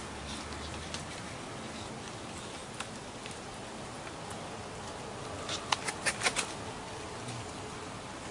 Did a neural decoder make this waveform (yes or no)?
no